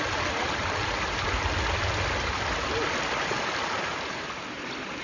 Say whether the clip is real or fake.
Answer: real